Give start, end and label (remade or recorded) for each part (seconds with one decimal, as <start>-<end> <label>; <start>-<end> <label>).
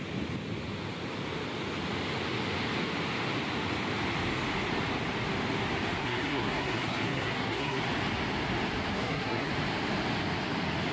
0.0-6.0 recorded; 6.0-7.8 remade; 7.8-8.9 recorded; 8.9-9.5 remade; 9.5-10.9 recorded